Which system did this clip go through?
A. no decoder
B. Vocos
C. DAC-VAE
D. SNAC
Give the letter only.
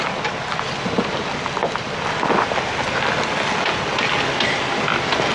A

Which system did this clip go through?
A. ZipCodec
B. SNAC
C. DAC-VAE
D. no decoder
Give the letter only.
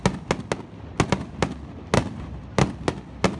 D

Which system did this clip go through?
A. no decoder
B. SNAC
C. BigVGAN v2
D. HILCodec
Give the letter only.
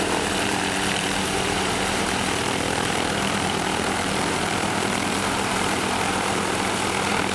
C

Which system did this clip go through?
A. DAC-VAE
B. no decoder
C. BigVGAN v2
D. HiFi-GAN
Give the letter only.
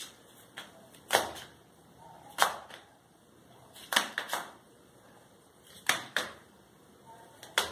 C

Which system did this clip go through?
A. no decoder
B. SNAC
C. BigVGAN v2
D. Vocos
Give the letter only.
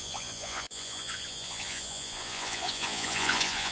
D